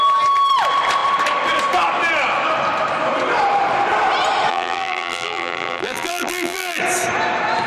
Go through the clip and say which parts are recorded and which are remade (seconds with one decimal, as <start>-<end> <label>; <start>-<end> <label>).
0.0-4.5 recorded; 4.5-6.8 remade; 6.8-7.7 recorded

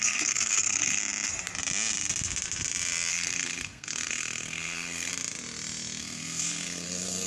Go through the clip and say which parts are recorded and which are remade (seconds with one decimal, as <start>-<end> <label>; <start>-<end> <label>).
0.0-1.0 remade; 1.0-3.1 recorded; 3.1-5.1 remade; 5.1-6.0 recorded; 6.0-7.3 remade